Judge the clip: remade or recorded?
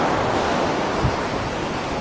recorded